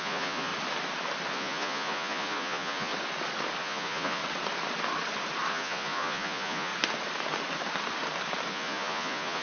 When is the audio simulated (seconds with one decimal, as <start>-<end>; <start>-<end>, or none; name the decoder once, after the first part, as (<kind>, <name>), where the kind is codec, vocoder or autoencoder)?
0.0-0.5 (vocoder, Vocos); 1.3-2.9; 3.6-4.2; 5.5-6.7; 8.5-9.4